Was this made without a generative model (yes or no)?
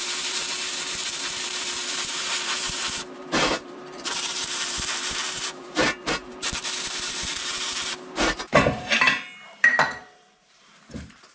no